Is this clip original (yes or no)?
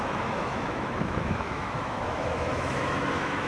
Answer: no